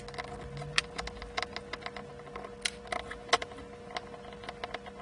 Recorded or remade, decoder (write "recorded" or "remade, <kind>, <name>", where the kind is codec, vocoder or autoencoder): recorded